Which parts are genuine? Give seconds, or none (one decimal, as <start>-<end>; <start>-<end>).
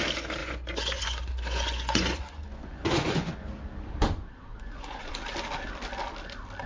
0.0-0.4; 3.5-4.5; 5.1-6.7